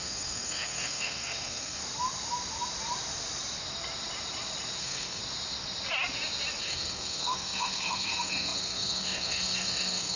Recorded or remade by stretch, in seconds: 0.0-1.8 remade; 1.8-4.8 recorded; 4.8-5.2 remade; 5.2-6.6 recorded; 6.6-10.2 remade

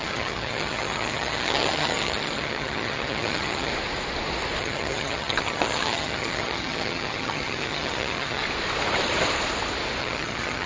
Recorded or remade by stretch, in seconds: 0.0-3.7 remade; 3.7-4.6 recorded; 4.6-8.4 remade; 8.4-10.0 recorded; 10.0-10.7 remade

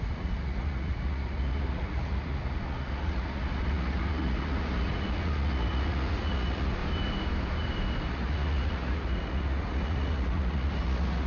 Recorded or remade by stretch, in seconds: 0.0-6.8 remade; 6.8-8.1 recorded; 8.1-11.3 remade

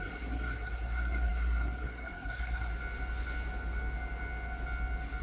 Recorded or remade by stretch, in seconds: 0.0-2.7 remade; 2.7-5.2 recorded

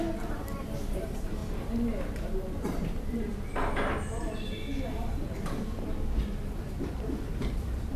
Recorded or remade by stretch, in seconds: 0.0-1.4 remade; 1.4-2.0 recorded; 2.0-3.5 remade; 3.5-7.3 recorded; 7.3-8.0 remade

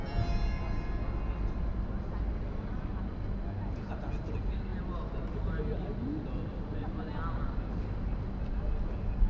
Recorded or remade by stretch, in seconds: 0.0-9.3 recorded

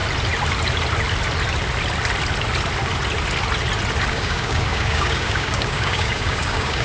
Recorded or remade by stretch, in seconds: 0.0-4.1 recorded; 4.1-6.8 remade